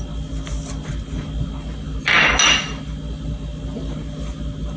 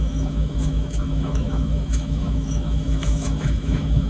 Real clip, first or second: first